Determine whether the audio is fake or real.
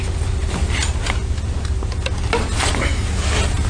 real